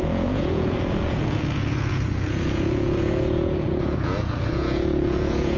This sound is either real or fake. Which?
fake